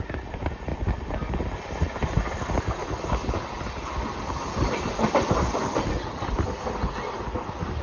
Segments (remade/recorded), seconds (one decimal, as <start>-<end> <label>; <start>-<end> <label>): 0.0-7.8 recorded